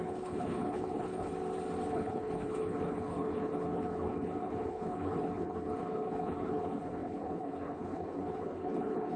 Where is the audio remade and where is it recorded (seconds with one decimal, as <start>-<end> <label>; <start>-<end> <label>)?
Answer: 0.0-1.3 remade; 1.3-1.9 recorded; 1.9-9.2 remade